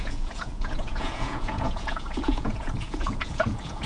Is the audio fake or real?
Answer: fake